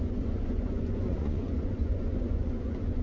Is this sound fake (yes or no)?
yes